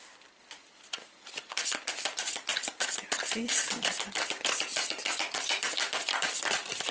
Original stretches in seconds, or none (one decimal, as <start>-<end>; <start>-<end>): 0.0-2.5